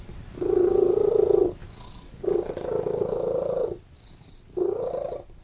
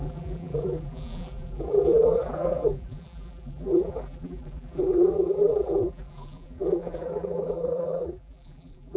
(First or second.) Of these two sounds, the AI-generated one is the second